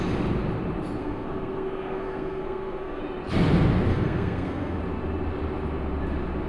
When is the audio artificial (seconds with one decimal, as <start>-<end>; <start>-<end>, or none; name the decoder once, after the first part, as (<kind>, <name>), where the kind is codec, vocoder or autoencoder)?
1.0-3.0 (codec, SNAC); 3.9-4.8